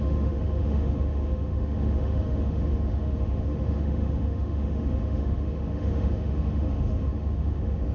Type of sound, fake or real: fake